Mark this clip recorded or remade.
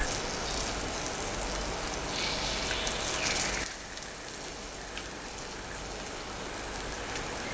recorded